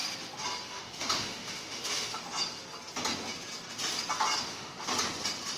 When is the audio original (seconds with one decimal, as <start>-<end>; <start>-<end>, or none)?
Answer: 0.0-0.7; 2.2-4.4; 4.9-5.6